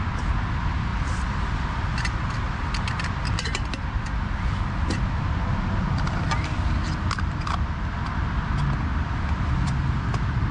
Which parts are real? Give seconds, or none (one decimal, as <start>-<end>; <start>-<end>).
0.0-0.9; 1.6-10.5